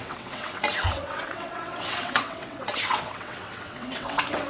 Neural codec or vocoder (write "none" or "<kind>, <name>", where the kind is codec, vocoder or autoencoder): vocoder, WaveNeXt